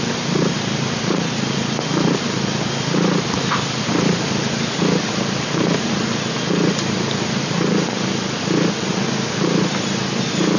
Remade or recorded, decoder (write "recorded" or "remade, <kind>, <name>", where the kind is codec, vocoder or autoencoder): remade, vocoder, BigVGAN v2